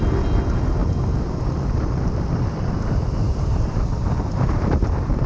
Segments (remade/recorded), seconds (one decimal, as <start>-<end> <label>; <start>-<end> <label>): 0.0-0.8 recorded; 0.8-2.4 remade; 2.4-3.2 recorded; 3.2-5.3 remade